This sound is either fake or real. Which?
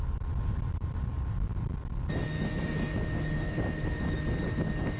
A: real